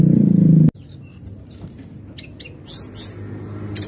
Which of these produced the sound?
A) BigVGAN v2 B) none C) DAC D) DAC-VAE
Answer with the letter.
B